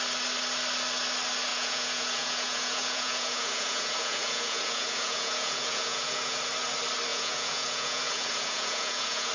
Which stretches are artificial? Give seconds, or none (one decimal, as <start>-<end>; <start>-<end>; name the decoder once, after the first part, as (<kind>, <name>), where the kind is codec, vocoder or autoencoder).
1.5-6.4 (vocoder, Vocos); 7.1-9.3